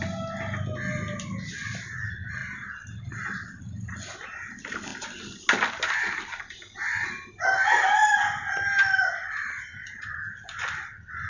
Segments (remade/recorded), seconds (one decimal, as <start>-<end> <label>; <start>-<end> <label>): 0.0-11.3 recorded